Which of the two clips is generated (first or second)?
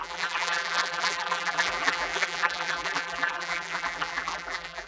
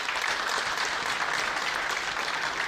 first